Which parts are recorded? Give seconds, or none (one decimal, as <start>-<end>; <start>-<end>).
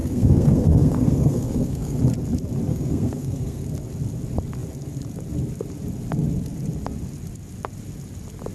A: 2.0-2.7; 3.6-8.5